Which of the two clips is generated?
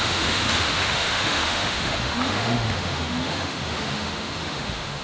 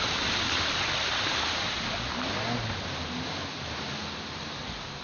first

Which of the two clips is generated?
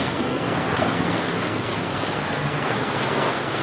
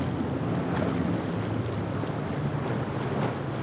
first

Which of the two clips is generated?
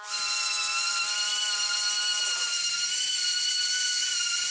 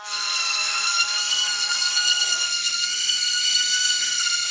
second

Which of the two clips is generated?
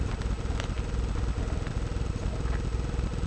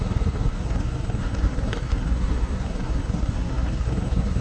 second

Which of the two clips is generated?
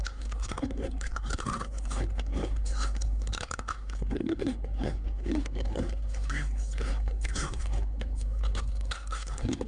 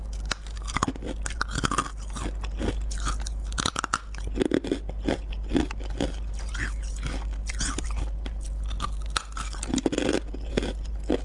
first